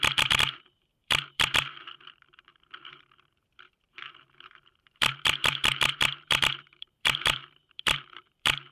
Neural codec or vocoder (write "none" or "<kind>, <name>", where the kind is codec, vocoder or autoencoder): vocoder, BigVGAN v2